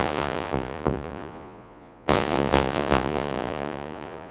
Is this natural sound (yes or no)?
no